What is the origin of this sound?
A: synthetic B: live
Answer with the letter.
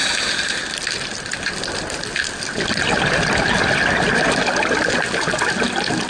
B